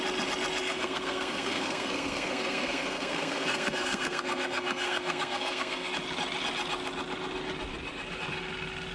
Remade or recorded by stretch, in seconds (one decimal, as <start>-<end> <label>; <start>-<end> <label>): 0.0-0.6 recorded; 0.6-5.9 remade; 5.9-8.9 recorded